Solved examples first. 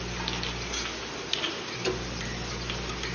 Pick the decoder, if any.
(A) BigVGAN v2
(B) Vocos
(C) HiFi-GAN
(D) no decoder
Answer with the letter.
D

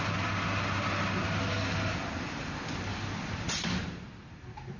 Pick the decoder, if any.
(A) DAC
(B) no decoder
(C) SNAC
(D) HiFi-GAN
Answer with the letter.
B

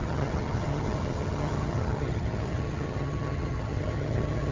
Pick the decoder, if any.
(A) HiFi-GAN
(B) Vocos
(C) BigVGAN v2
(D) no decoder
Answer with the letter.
A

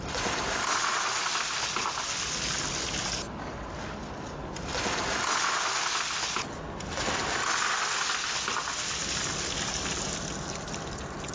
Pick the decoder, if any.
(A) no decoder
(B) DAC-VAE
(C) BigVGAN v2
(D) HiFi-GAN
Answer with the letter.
A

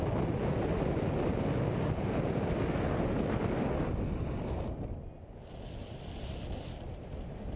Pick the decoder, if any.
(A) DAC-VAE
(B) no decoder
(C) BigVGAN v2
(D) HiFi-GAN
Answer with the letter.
B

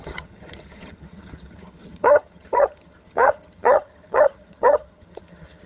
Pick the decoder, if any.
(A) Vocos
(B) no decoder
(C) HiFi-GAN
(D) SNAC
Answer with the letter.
C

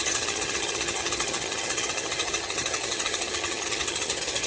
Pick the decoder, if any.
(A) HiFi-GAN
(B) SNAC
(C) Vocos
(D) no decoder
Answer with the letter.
A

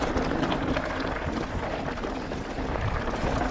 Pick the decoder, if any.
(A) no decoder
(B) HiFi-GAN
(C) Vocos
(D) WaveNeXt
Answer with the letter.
A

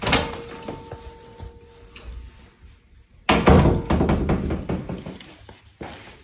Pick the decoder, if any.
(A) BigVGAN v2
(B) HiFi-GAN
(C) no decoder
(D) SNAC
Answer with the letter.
C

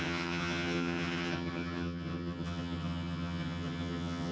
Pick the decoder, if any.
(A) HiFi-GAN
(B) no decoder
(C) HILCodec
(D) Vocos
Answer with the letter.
A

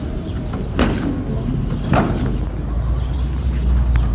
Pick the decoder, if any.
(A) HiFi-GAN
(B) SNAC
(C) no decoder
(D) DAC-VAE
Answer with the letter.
C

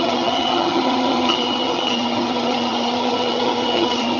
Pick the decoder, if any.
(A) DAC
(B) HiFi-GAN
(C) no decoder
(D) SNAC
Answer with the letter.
B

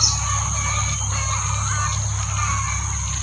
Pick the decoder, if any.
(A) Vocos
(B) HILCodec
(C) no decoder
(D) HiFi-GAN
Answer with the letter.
C